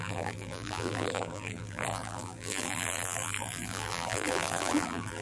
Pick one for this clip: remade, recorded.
remade